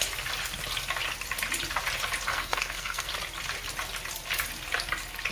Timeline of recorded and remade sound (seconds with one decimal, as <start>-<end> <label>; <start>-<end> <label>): 0.0-2.3 recorded; 2.3-3.1 remade; 3.1-5.3 recorded